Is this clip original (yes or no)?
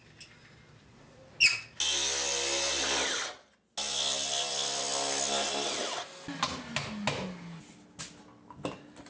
yes